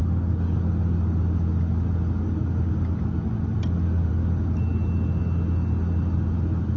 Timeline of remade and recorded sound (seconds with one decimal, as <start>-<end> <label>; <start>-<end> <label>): 0.0-6.8 recorded